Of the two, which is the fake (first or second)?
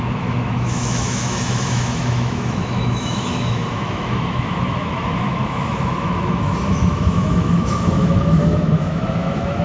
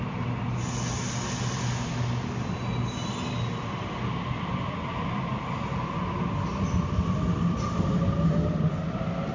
first